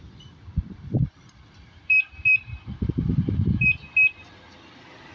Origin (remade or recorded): remade